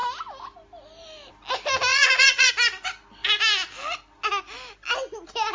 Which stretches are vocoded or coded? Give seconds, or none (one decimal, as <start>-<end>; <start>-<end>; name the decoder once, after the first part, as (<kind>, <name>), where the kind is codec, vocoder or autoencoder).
1.9-2.5 (vocoder, Vocos)